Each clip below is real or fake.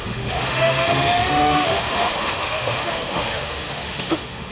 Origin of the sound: fake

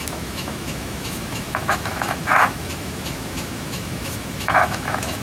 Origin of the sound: fake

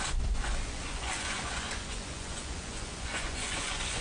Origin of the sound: fake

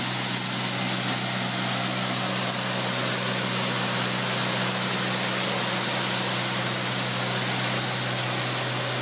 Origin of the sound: real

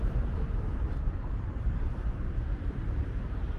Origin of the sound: fake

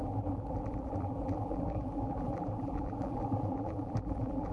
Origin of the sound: fake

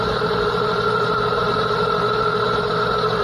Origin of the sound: fake